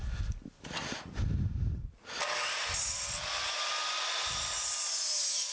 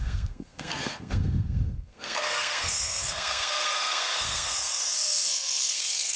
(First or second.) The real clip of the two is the first